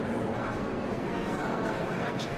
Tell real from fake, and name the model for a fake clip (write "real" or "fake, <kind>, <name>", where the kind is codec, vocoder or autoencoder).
fake, codec, SNAC